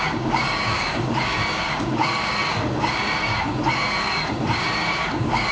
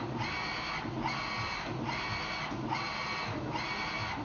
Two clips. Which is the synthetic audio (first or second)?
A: first